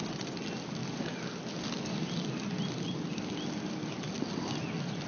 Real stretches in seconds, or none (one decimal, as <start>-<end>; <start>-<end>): 0.0-5.1

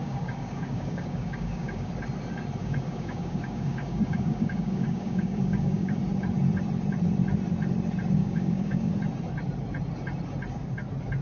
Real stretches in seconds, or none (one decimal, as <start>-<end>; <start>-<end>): 1.9-2.6; 6.0-8.2; 8.9-11.2